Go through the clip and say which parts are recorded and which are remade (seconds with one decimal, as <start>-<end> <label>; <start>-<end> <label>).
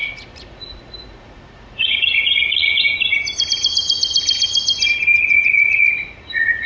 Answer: 0.0-2.8 remade; 2.8-5.3 recorded; 5.3-6.7 remade